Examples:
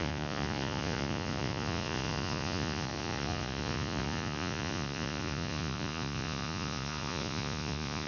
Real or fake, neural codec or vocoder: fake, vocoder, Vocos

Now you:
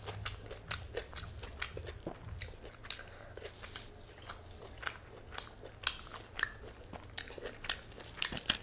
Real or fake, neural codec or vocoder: real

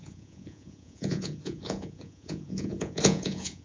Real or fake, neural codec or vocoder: fake, vocoder, Vocos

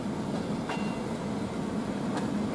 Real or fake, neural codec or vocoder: real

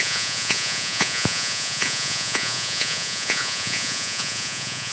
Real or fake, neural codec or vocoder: fake, vocoder, Vocos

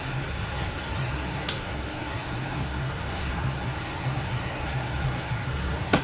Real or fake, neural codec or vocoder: fake, codec, SNAC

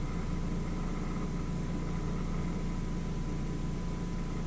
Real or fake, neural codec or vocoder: real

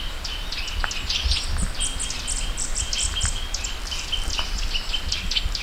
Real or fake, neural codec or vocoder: real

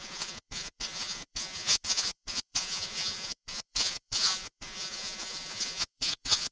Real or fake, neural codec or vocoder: fake, vocoder, Vocos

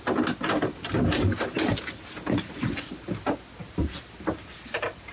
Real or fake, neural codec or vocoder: real